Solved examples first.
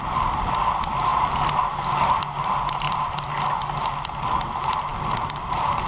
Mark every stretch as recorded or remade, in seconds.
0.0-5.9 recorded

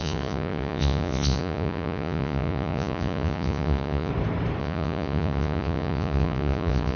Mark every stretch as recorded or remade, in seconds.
0.0-4.1 remade; 4.1-4.6 recorded; 4.6-7.0 remade